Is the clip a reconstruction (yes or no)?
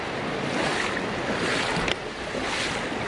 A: no